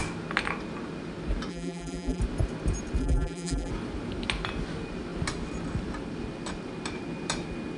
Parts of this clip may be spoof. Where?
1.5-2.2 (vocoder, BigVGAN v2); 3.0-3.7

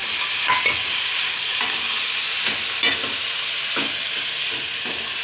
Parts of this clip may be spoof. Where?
none

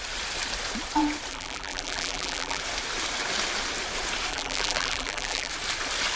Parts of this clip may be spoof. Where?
1.3-2.6 (vocoder, BigVGAN v2); 4.3-5.5

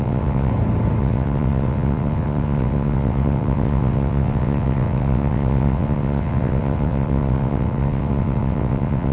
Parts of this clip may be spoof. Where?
0.0-0.5 (vocoder, WaveNeXt); 1.0-9.1

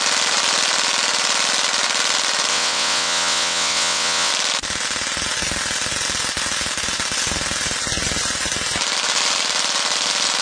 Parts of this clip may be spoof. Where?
2.5-4.3 (vocoder, WaveNeXt)

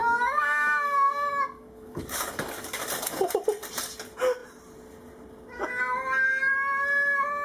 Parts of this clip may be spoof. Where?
0.0-2.8 (codec, DAC)

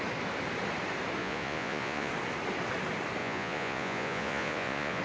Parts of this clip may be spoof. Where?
1.2-2.1 (vocoder, Vocos); 3.2-5.0